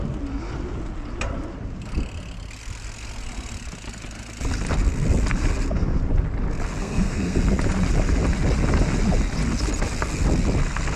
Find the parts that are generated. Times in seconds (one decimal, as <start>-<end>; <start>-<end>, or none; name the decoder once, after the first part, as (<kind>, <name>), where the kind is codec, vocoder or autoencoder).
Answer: 6.8-7.4 (codec, SNAC)